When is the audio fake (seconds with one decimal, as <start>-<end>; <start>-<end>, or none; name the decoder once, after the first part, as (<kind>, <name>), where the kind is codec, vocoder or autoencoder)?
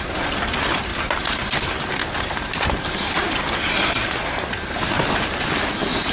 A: none